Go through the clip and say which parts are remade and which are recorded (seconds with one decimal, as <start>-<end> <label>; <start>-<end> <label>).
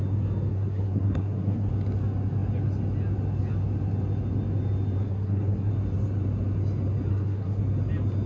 0.0-0.5 recorded; 0.5-1.7 remade; 1.7-5.0 recorded; 5.0-5.7 remade; 5.7-7.1 recorded; 7.1-7.6 remade; 7.6-8.3 recorded